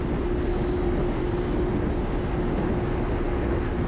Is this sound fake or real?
real